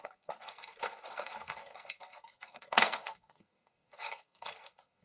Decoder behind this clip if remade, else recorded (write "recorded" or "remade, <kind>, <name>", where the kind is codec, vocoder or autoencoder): remade, codec, SNAC